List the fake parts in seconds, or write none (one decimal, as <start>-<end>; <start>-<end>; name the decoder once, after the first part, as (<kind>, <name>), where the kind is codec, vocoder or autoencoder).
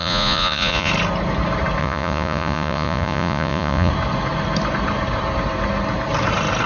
0.0-0.9 (vocoder, Vocos); 1.8-3.9